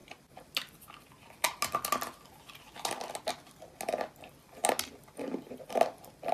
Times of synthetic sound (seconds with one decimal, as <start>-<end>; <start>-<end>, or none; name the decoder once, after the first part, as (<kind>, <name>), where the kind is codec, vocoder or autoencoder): none

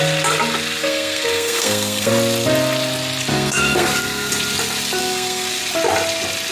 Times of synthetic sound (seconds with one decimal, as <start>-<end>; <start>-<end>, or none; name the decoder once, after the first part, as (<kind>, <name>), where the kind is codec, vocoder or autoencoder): 0.8-2.1 (codec, SNAC); 3.3-4.3; 5.0-5.6

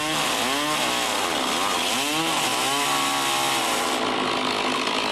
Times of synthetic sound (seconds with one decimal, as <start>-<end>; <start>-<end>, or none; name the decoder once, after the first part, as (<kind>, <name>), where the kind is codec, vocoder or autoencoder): none

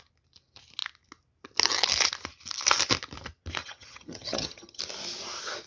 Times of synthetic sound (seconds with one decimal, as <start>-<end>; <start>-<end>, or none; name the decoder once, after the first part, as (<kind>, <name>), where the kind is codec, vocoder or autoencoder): 3.6-4.8 (vocoder, HiFi-GAN)

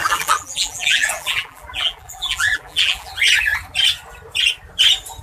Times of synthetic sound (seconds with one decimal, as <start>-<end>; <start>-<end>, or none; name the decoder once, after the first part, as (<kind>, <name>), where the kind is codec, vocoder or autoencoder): 0.0-3.1 (vocoder, BigVGAN v2)

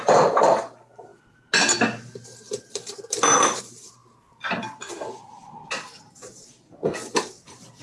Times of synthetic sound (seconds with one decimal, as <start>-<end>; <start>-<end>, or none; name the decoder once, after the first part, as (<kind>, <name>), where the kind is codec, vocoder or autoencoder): none

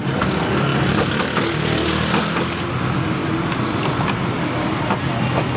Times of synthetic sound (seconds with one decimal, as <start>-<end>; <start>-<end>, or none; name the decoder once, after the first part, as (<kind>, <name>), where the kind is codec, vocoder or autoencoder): none

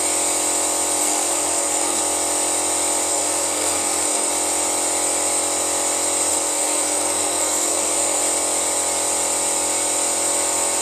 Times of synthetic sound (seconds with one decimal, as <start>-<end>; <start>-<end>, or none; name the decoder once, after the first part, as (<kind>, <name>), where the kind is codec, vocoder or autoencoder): 1.0-2.0 (codec, SNAC); 3.1-4.3; 6.3-8.2